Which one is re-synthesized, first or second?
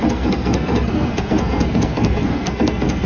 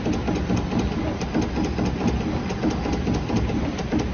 first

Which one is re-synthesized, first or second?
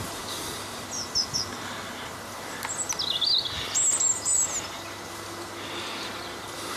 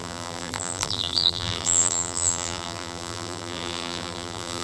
second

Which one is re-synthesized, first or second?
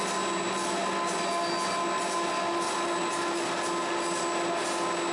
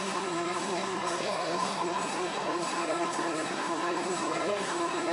second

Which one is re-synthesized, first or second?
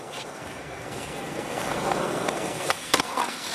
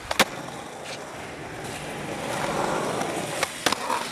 first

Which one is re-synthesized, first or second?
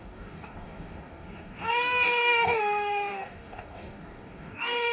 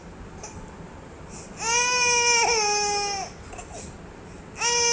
first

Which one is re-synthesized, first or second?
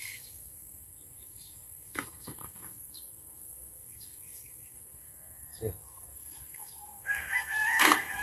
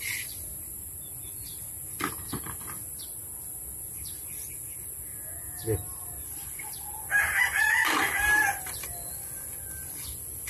first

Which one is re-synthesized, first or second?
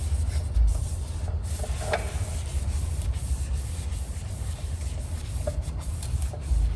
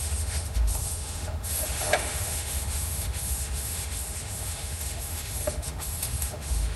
second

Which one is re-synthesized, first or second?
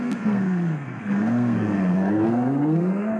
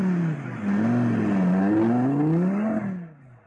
first